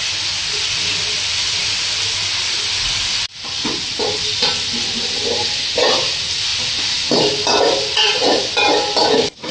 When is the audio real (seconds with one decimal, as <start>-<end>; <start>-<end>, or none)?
0.0-7.9; 8.5-9.5